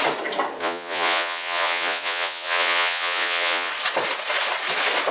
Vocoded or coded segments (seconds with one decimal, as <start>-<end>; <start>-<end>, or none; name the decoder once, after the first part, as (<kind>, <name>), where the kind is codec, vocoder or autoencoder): 0.6-3.7 (vocoder, Vocos)